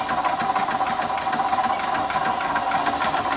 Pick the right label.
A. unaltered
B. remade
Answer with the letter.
A